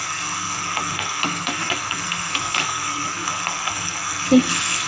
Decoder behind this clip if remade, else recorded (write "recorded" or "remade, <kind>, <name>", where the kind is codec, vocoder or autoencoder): remade, codec, SNAC